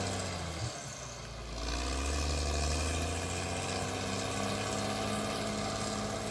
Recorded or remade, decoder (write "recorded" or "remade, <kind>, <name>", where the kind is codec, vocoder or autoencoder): recorded